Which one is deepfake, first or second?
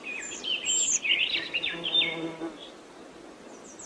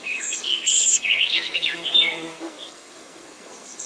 second